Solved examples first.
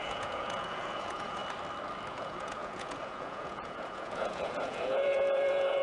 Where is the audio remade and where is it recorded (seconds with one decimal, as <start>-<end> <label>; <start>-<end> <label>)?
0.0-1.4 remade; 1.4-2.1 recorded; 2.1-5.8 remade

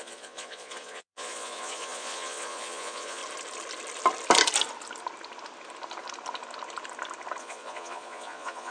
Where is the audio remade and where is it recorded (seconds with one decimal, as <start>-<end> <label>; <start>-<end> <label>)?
0.0-3.2 remade; 3.2-7.4 recorded; 7.4-8.7 remade

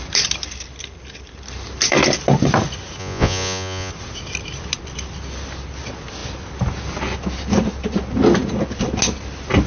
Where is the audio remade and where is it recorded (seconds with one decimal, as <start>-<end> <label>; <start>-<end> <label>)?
0.0-3.0 recorded; 3.0-3.9 remade; 3.9-9.7 recorded

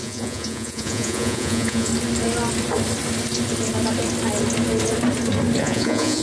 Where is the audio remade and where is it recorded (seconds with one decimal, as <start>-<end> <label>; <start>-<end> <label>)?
0.0-1.9 remade; 1.9-5.6 recorded; 5.6-6.2 remade